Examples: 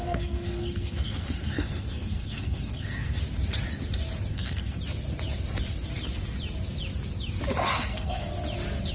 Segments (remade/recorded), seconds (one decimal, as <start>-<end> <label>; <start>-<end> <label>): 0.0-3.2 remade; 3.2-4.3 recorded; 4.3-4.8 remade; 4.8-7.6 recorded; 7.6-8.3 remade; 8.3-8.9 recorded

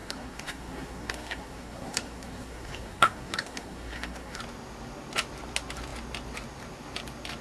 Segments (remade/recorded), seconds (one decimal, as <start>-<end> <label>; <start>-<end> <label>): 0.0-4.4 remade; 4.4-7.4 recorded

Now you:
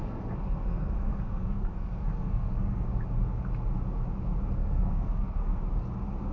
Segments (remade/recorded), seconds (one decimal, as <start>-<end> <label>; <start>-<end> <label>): 0.0-3.0 remade; 3.0-4.6 recorded; 4.6-5.6 remade; 5.6-6.3 recorded